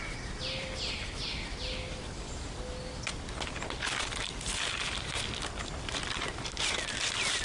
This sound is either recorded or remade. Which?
remade